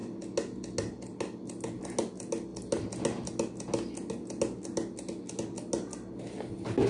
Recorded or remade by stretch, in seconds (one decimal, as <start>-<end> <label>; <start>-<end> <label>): 0.0-6.9 recorded